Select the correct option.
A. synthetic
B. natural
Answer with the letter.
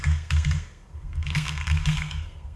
A